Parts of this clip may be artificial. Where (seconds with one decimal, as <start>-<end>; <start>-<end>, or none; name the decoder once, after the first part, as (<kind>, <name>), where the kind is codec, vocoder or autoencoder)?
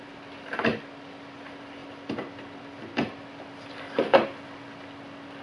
none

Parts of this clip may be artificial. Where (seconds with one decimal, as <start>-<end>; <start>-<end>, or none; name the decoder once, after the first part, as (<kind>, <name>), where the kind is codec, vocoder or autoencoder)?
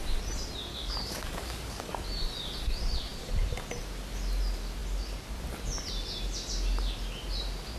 0.7-1.9 (codec, DAC)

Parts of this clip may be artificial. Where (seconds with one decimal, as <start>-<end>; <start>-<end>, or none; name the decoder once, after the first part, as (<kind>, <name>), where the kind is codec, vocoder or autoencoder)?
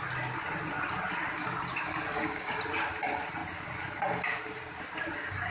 2.1-2.6 (codec, DAC)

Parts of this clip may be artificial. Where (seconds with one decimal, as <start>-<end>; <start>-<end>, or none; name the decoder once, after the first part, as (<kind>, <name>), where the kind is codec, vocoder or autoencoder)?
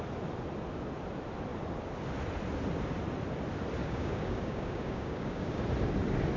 3.8-5.6 (codec, DAC)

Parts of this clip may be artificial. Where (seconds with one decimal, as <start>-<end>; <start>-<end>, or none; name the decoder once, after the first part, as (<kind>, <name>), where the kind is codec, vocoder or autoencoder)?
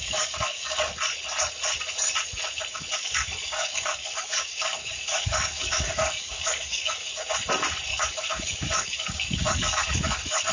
0.0-0.9 (codec, DAC); 2.7-7.1; 7.9-10.5